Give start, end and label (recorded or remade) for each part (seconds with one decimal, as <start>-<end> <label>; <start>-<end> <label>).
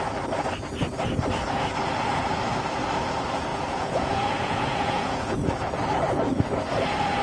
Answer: 0.0-3.5 recorded; 3.5-5.5 remade; 5.5-7.2 recorded